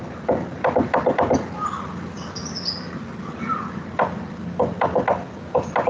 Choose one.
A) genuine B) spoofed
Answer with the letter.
A